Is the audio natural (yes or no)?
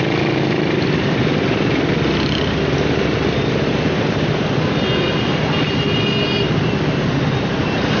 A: yes